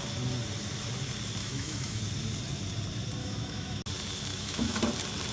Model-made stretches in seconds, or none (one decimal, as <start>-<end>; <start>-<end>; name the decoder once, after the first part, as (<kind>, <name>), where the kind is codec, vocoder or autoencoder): 1.4-2.0 (autoencoder, DAC-VAE); 3.2-3.8; 4.3-4.8